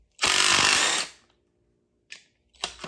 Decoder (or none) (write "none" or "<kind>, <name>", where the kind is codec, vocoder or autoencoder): none